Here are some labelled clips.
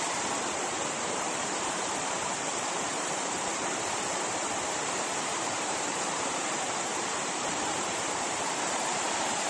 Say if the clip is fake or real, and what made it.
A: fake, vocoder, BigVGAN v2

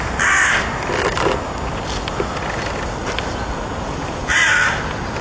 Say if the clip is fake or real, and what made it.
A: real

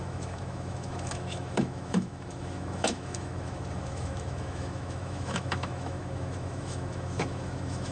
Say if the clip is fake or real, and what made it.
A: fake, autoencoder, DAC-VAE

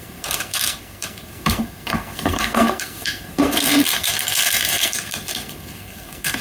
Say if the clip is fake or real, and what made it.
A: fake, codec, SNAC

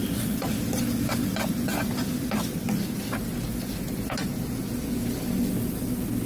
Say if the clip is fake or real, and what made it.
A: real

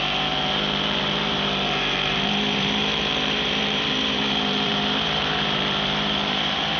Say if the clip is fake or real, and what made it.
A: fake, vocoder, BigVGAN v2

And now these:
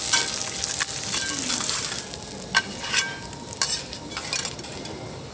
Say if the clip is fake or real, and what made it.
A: real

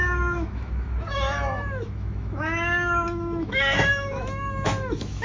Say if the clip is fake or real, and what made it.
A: fake, autoencoder, DAC-VAE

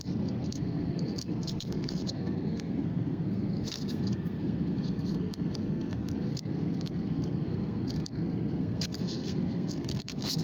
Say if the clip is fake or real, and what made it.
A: fake, codec, SNAC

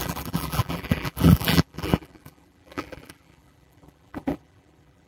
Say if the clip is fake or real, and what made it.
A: fake, vocoder, BigVGAN v2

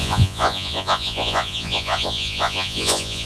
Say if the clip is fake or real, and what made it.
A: fake, vocoder, Vocos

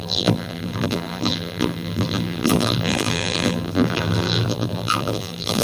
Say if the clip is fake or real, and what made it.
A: fake, vocoder, BigVGAN v2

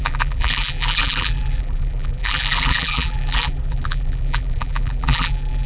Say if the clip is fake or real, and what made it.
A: fake, vocoder, BigVGAN v2